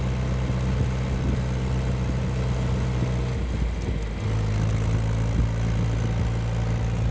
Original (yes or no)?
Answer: yes